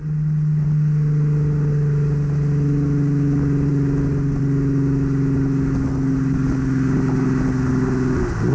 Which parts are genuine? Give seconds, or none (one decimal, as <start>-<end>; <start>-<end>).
0.0-8.5